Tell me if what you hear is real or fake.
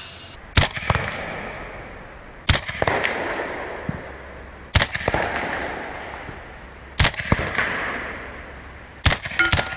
real